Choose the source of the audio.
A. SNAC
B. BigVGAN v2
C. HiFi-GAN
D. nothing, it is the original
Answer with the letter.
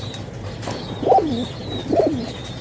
B